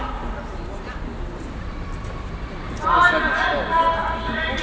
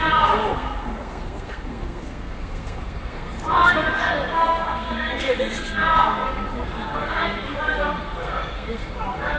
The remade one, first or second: second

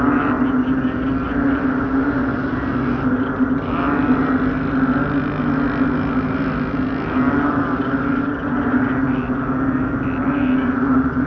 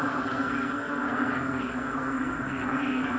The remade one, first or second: second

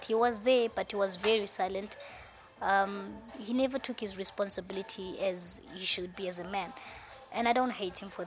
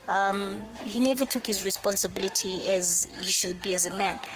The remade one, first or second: second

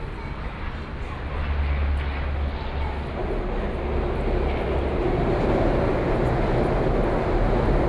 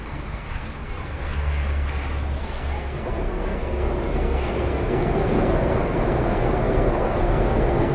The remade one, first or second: second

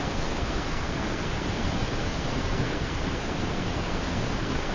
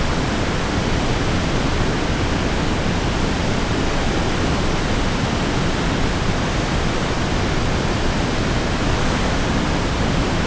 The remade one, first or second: first